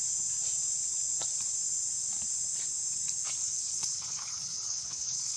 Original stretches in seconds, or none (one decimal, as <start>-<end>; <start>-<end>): 0.0-3.4